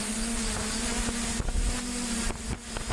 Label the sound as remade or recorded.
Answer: recorded